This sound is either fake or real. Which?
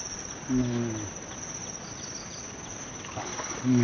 real